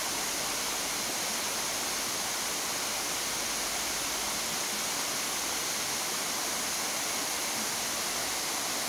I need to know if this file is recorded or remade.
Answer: recorded